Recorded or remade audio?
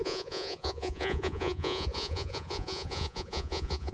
remade